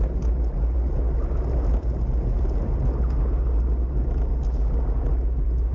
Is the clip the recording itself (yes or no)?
yes